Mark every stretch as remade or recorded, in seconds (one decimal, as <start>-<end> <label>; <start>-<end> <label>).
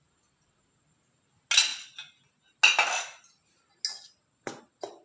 0.0-5.0 recorded